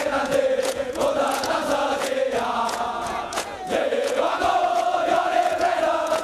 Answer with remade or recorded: remade